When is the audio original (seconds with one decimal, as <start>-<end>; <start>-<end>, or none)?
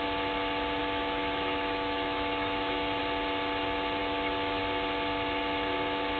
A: 0.0-0.8; 3.0-4.0; 4.6-6.2